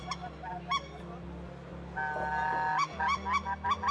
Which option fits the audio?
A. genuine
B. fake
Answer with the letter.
A